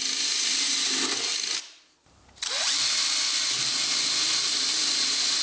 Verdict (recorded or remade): recorded